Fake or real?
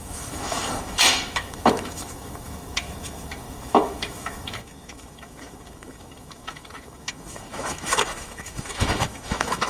fake